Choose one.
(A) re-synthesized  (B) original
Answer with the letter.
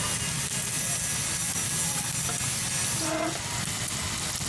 B